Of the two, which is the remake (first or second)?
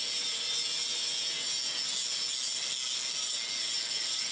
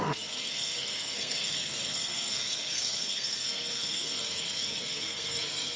second